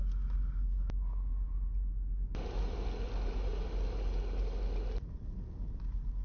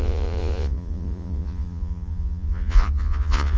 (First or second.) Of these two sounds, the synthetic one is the second